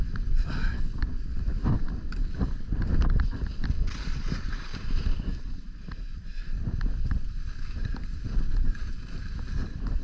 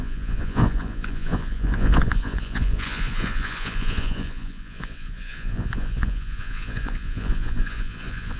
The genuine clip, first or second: first